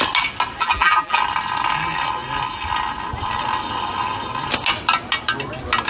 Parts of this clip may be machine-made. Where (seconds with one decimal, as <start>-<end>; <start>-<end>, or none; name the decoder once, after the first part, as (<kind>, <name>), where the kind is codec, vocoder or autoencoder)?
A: 0.6-1.2 (vocoder, BigVGAN v2)